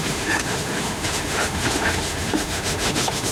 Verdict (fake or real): fake